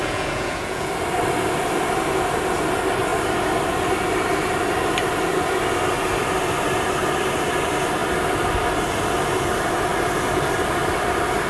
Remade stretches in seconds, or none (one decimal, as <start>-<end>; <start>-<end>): 0.0-0.9